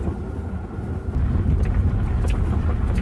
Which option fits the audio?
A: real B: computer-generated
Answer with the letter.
A